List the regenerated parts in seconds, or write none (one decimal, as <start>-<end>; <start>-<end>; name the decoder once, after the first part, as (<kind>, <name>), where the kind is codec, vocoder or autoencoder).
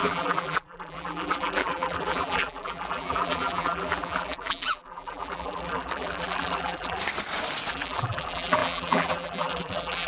0.0-7.0 (vocoder, BigVGAN v2); 7.7-10.1